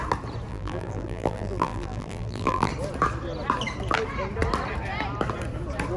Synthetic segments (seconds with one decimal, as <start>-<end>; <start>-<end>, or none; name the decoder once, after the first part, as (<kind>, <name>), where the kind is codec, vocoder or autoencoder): 0.5-2.7 (vocoder, BigVGAN v2)